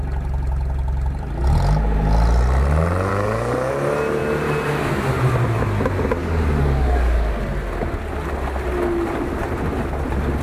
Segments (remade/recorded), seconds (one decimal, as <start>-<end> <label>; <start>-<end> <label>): 0.0-3.1 recorded; 3.1-3.7 remade; 3.7-6.2 recorded; 6.2-7.4 remade; 7.4-10.4 recorded